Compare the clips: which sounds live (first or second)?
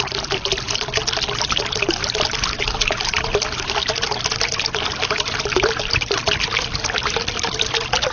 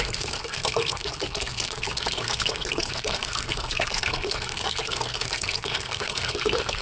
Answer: first